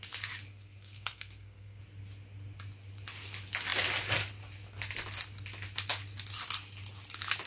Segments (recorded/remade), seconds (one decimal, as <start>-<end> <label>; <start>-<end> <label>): 0.0-0.5 recorded; 0.5-1.8 remade; 1.8-7.5 recorded